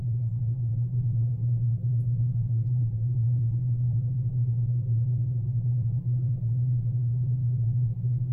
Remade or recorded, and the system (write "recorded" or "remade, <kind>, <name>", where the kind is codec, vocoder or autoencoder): remade, vocoder, BigVGAN v2